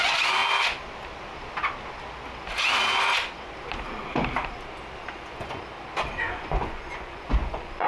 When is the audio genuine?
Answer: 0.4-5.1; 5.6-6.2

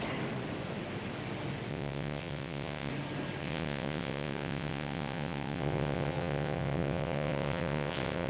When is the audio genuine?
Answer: 0.0-1.7; 2.9-3.4

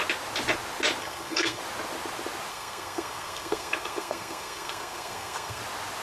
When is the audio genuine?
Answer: 0.0-1.0; 1.6-2.5; 5.6-6.0

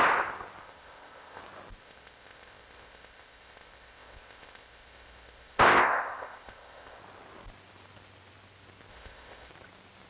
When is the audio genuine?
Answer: 0.0-0.6; 1.4-1.8; 7.0-8.9; 9.5-10.1

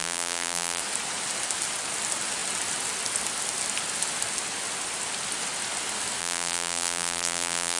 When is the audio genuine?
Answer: 0.8-6.2

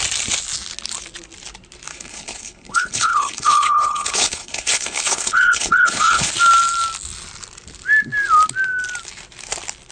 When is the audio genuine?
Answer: 0.0-1.9; 6.3-9.9

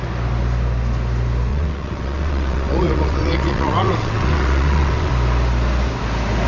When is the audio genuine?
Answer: 0.0-1.5; 5.1-6.5